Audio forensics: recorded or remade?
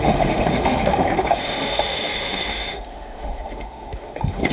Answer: remade